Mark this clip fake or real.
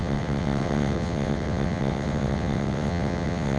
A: fake